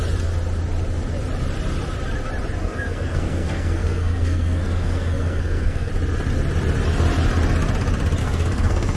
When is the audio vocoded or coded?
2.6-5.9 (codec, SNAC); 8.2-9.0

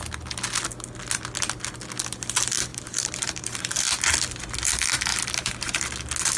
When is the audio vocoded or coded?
2.7-3.8 (vocoder, BigVGAN v2); 5.1-5.8

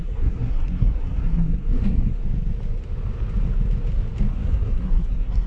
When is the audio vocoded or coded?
0.0-2.2 (codec, SNAC); 4.3-5.5